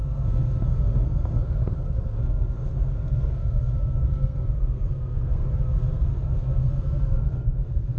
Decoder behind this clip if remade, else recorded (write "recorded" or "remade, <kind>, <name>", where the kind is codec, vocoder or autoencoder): remade, codec, SNAC